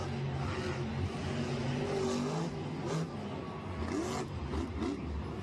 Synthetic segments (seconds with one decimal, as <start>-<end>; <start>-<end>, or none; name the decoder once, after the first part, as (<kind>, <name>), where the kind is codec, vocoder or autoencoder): none